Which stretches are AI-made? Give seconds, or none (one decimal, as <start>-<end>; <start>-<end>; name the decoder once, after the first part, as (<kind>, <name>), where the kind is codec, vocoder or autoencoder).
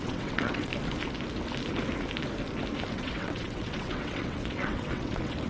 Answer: 0.0-0.7 (vocoder, WaveNeXt); 2.9-5.5